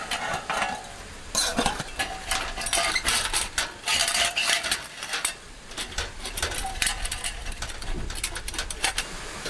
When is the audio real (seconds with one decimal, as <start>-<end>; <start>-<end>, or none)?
0.0-4.0; 9.0-9.5